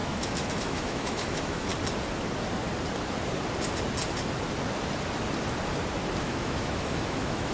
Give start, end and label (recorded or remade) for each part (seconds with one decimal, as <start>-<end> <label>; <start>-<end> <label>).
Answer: 0.0-1.7 remade; 1.7-6.2 recorded; 6.2-7.5 remade

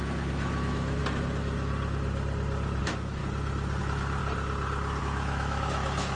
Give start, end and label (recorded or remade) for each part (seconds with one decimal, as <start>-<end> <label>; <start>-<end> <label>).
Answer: 0.0-1.0 remade; 1.0-2.8 recorded; 2.8-3.2 remade; 3.2-3.8 recorded; 3.8-4.2 remade; 4.2-5.0 recorded; 5.0-6.2 remade